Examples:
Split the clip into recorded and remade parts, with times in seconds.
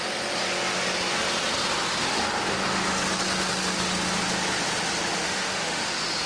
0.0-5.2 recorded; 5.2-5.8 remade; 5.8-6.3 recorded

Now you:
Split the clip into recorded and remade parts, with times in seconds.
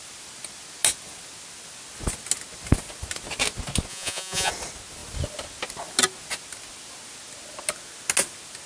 0.0-3.9 recorded; 3.9-4.5 remade; 4.5-8.7 recorded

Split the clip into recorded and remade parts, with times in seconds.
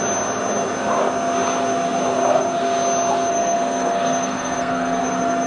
0.0-3.3 recorded; 3.3-5.0 remade; 5.0-5.5 recorded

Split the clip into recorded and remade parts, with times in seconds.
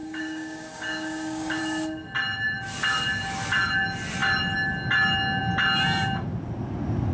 0.0-1.6 remade; 1.6-7.1 recorded